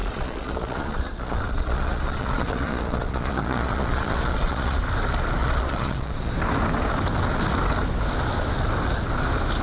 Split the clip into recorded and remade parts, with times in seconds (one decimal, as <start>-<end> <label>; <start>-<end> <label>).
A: 0.0-4.8 remade; 4.8-5.4 recorded; 5.4-6.3 remade; 6.3-9.6 recorded